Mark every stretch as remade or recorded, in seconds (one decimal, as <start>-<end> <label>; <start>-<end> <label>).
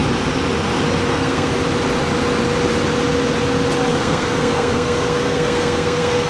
0.0-1.1 recorded; 1.1-1.5 remade; 1.5-3.9 recorded; 3.9-6.3 remade